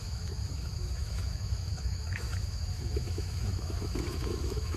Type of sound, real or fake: fake